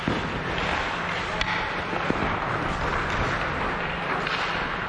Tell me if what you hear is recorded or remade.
recorded